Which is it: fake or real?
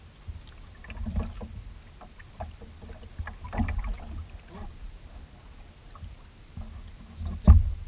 real